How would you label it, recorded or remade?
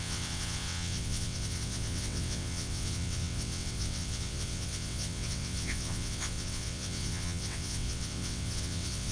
remade